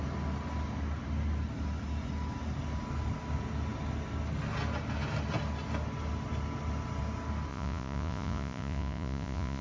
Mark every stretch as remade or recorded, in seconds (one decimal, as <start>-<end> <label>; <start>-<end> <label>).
0.0-7.5 recorded; 7.5-9.6 remade